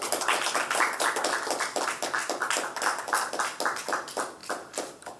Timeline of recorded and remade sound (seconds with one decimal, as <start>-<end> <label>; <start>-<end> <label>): 0.0-5.2 recorded